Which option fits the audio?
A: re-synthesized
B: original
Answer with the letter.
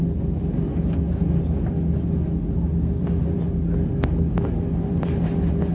B